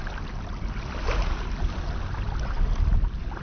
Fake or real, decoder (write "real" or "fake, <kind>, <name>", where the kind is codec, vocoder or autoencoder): real